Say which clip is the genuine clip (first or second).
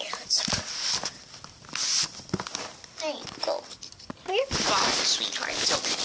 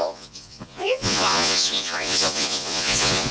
first